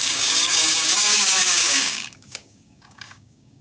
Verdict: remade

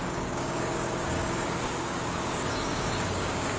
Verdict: remade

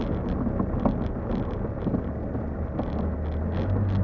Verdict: recorded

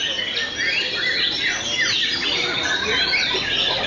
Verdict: recorded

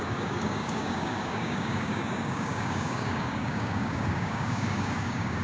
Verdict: remade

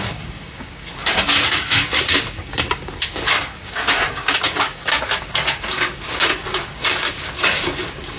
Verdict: remade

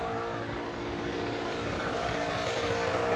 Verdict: remade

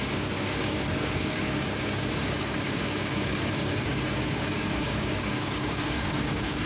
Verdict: remade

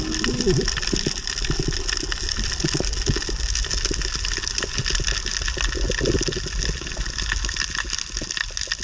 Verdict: recorded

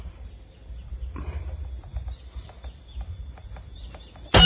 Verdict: recorded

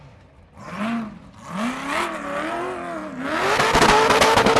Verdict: recorded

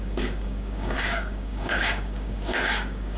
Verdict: remade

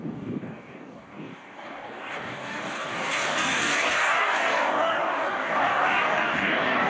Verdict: remade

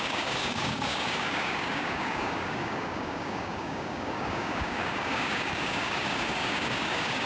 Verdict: remade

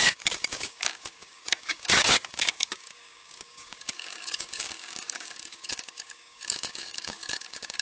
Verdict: remade